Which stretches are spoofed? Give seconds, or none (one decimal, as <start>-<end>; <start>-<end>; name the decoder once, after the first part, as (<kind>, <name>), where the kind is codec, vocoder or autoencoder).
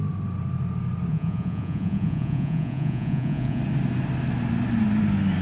1.1-3.6 (vocoder, Vocos)